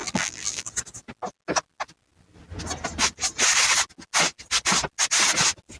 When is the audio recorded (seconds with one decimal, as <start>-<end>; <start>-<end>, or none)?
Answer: 0.7-5.8